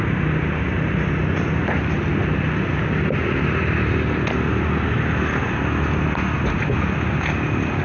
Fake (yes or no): no